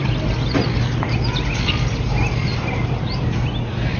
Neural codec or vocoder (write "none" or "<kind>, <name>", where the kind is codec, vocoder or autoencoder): none